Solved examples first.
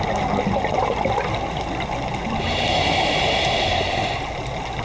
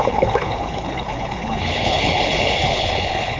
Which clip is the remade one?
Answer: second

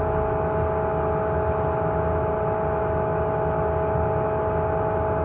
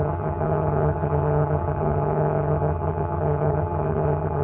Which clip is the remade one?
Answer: second